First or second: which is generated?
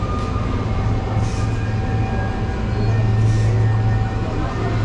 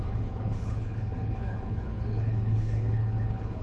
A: second